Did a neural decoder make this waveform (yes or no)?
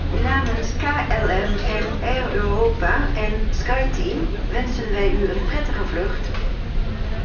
no